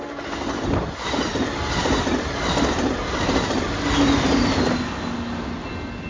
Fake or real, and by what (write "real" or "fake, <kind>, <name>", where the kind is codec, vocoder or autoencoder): real